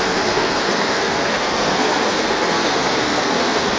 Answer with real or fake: fake